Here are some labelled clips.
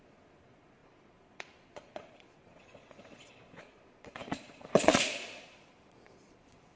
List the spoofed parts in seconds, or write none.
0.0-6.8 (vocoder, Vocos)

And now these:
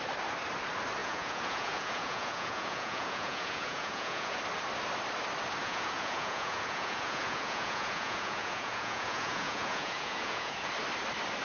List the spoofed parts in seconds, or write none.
1.0-4.4 (vocoder, Vocos); 5.6-10.7

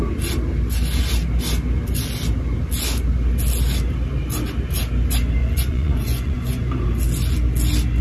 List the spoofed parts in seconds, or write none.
5.4-6.8 (vocoder, Vocos)

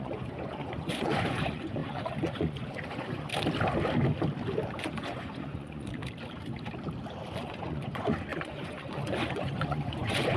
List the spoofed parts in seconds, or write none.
0.0-3.3 (vocoder, Vocos); 4.8-6.0; 7.4-10.4